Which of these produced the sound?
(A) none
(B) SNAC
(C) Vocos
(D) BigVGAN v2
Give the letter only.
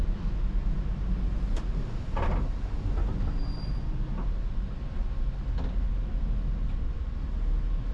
A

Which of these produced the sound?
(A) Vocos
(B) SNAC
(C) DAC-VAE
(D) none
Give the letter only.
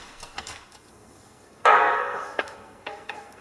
B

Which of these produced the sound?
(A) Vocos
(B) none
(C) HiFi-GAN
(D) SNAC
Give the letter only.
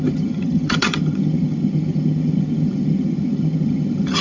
C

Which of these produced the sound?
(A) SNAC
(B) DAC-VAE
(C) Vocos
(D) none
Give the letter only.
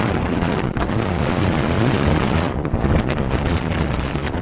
C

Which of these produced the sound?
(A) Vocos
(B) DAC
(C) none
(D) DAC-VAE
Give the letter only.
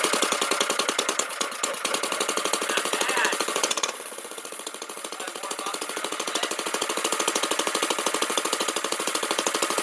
A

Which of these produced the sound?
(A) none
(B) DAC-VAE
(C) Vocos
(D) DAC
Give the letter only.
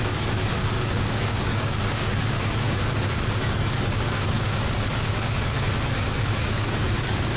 D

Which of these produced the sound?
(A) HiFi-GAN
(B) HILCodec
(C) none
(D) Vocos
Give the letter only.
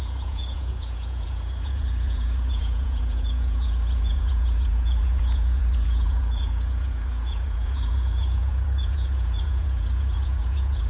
D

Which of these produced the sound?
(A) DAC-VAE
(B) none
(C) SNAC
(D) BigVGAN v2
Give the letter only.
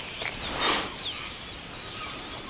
B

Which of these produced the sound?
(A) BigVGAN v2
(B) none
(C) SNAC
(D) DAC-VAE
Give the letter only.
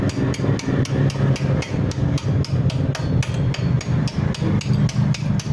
B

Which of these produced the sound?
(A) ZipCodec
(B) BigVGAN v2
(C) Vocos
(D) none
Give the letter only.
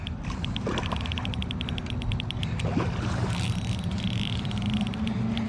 B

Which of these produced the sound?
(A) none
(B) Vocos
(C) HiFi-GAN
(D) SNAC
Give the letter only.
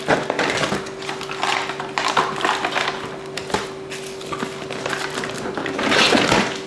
A